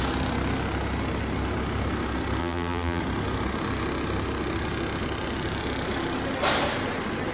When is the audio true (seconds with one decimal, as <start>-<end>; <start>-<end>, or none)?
0.0-2.4; 3.0-7.3